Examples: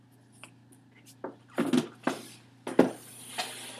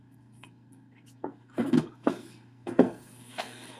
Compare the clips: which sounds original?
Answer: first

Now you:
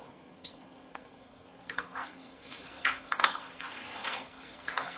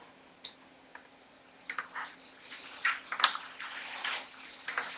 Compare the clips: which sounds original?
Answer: second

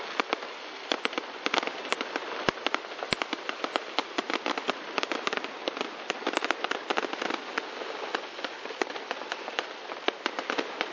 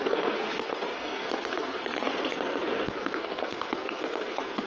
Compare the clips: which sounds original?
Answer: first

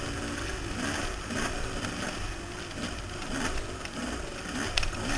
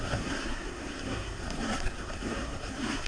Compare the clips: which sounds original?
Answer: first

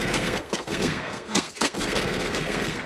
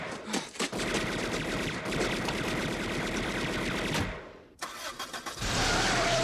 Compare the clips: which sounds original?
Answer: second